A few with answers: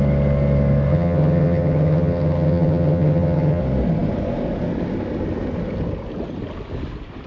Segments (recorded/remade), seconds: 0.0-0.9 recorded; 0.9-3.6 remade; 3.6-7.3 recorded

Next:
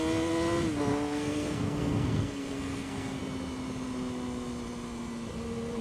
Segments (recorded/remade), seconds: 0.0-0.9 recorded; 0.9-3.2 remade; 3.2-5.8 recorded

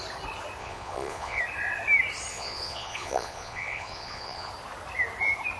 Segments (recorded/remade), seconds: 0.0-0.6 recorded; 0.6-1.4 remade; 1.4-2.3 recorded; 2.3-4.5 remade; 4.5-5.6 recorded